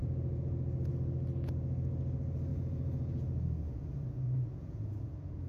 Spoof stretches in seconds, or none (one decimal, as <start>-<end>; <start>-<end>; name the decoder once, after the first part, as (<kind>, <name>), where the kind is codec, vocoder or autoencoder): 0.0-0.9 (vocoder, Vocos); 2.5-5.5